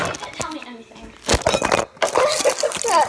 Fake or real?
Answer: real